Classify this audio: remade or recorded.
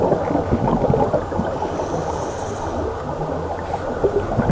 recorded